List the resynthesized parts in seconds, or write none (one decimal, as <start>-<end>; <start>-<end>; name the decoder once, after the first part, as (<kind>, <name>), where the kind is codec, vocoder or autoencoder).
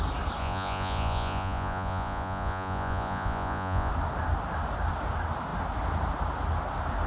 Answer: 0.4-3.9 (vocoder, Vocos)